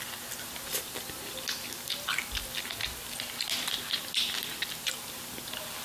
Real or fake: real